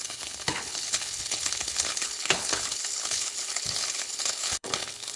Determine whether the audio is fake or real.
fake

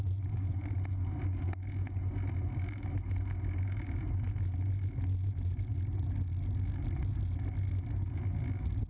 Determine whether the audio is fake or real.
real